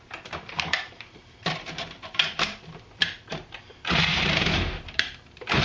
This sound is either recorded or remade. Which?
remade